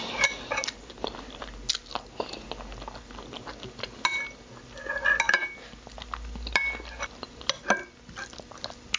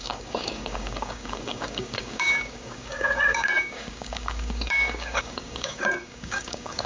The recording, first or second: first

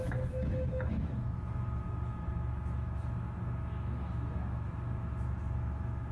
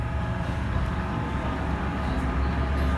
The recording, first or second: second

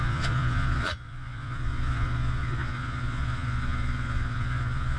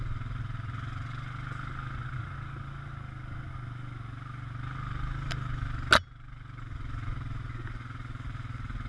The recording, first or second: second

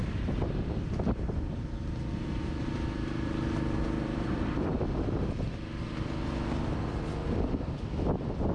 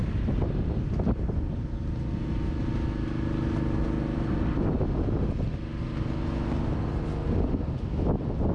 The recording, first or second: second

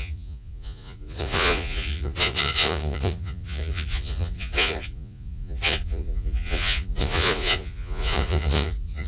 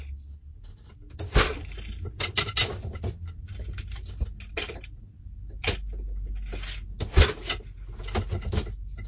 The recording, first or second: second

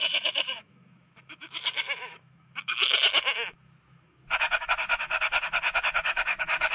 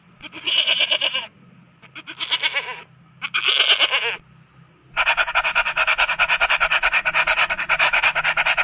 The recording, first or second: second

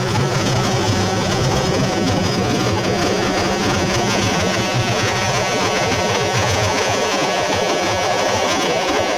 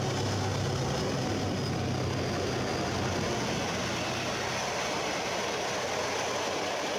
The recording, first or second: second